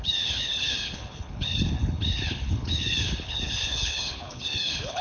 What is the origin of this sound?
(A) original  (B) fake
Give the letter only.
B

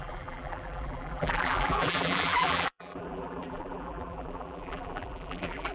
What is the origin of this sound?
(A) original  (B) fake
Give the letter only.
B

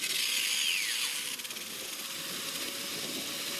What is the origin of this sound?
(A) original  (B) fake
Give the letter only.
A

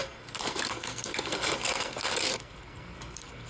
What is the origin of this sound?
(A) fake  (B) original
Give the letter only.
A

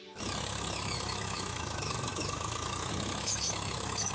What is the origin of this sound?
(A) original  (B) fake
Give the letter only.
B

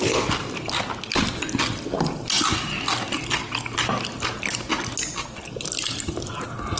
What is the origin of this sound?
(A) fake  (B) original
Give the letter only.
B